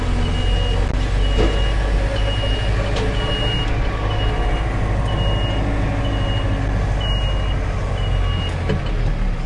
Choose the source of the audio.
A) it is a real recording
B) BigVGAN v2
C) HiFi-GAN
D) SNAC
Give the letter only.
A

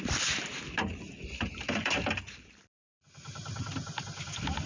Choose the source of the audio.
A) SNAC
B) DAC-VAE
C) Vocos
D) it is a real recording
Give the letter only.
D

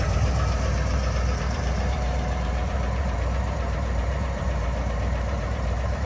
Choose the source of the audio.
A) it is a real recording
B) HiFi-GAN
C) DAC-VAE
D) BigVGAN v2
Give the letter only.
D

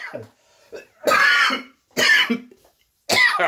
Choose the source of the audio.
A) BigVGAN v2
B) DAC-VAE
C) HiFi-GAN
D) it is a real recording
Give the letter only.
D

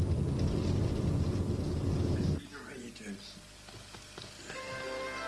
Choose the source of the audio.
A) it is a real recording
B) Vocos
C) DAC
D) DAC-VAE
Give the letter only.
A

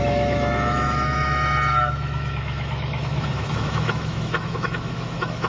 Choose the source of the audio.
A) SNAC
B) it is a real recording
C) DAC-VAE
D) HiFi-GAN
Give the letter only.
C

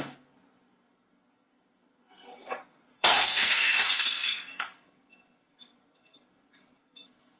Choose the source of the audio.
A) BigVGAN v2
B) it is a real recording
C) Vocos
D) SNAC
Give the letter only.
D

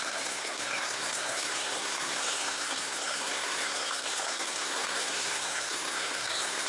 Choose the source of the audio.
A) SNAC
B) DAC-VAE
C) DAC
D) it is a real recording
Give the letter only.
A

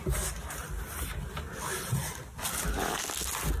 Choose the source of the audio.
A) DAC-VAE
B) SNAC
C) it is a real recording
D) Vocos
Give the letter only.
C